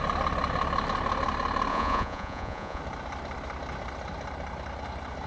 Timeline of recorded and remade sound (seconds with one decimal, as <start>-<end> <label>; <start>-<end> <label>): 0.0-1.7 recorded; 1.7-2.8 remade; 2.8-5.3 recorded